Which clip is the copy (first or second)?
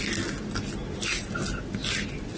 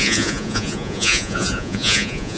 second